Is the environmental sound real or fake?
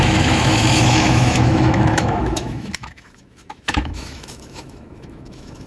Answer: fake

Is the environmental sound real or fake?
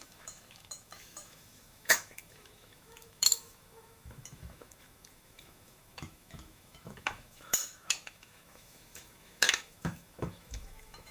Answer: fake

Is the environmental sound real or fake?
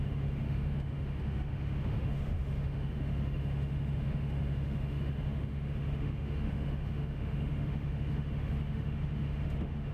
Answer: fake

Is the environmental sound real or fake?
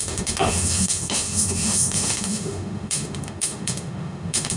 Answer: fake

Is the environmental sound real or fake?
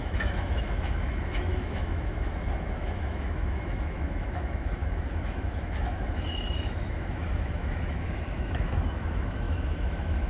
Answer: fake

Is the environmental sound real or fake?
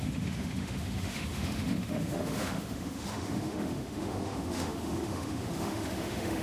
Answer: fake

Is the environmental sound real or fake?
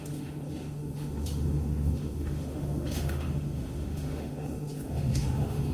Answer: fake